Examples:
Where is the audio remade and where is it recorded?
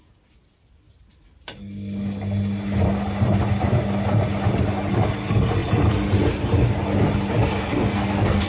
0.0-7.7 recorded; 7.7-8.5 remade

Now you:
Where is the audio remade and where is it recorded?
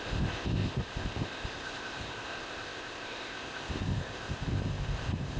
0.0-5.4 remade